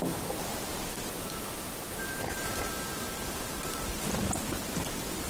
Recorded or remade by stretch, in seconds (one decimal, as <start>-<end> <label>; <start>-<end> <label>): 0.0-5.3 remade